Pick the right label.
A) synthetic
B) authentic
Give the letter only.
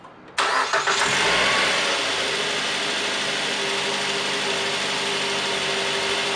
B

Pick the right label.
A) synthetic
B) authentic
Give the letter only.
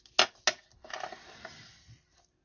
B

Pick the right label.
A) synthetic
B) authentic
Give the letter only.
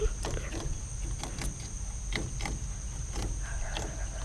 B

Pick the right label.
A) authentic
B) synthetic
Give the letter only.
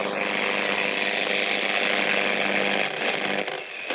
A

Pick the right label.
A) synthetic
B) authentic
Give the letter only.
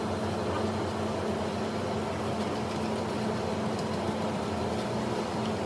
B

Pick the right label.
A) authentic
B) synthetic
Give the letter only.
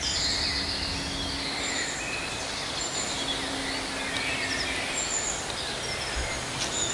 A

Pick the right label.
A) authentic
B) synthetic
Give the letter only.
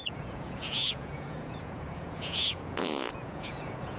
B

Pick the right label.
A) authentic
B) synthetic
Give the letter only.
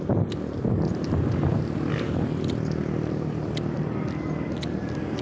A